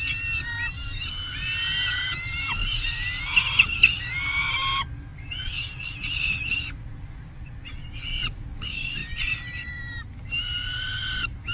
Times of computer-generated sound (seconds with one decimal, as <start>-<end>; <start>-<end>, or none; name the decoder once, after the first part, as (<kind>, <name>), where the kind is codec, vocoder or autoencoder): 5.1-5.9 (vocoder, BigVGAN v2); 9.0-9.8